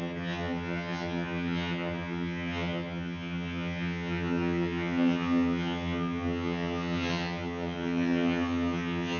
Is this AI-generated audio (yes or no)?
yes